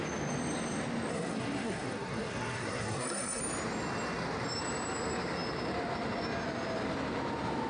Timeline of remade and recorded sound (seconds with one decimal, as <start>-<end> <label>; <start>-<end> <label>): 0.0-1.1 recorded; 1.1-3.4 remade; 3.4-7.7 recorded